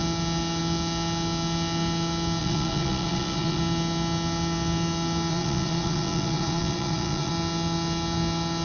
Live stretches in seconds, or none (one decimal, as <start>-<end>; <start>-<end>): 0.0-2.4; 3.6-5.3; 7.3-8.6

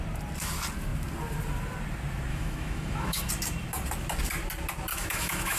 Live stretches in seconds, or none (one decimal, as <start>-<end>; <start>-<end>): 0.0-2.3; 3.3-4.9